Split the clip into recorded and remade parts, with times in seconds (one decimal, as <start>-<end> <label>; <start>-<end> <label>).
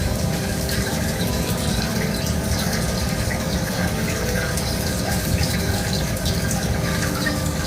0.0-1.9 remade; 1.9-2.4 recorded; 2.4-7.7 remade